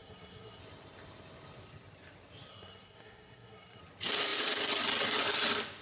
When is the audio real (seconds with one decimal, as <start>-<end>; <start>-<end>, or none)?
0.6-2.5; 3.8-5.8